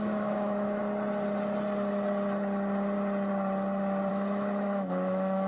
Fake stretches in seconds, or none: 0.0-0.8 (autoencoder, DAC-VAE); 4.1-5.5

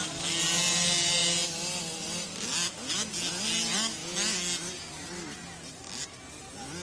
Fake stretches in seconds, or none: none

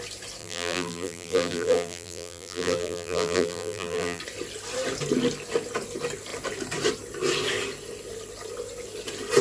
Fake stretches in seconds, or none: 0.4-4.2 (vocoder, BigVGAN v2)